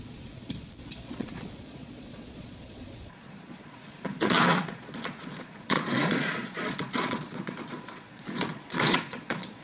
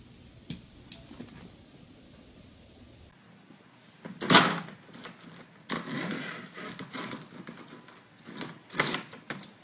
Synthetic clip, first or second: first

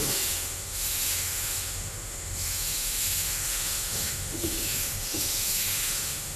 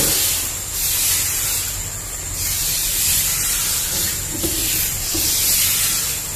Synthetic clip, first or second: first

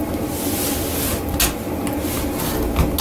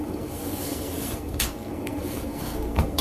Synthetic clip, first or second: second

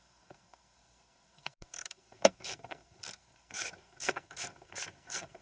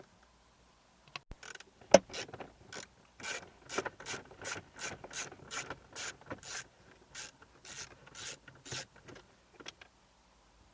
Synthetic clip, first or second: first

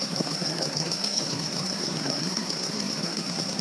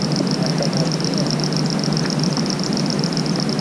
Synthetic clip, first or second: first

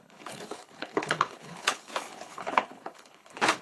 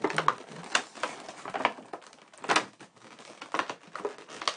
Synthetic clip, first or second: first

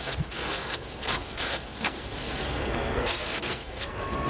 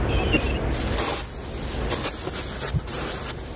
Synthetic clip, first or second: first